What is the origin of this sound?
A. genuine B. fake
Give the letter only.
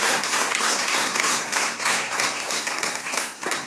B